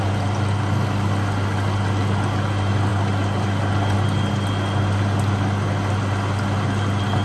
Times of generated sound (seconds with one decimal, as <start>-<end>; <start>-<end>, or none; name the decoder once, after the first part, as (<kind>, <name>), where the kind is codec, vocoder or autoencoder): none